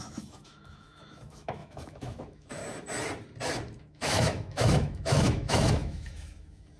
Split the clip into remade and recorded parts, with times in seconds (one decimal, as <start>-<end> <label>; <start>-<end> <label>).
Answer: 0.0-2.6 remade; 2.6-3.8 recorded; 3.8-6.8 remade